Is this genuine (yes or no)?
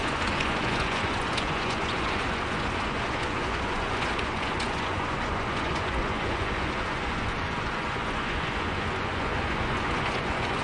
no